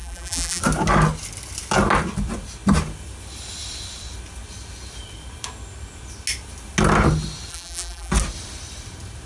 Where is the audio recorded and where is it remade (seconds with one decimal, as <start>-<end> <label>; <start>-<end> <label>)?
0.0-0.6 remade; 0.6-7.5 recorded; 7.5-8.1 remade; 8.1-9.3 recorded